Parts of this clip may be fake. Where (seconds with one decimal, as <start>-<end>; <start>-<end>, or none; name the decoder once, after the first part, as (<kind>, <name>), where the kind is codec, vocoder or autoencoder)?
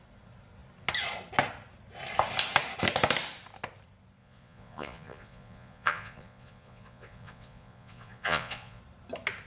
4.2-8.8 (vocoder, Vocos)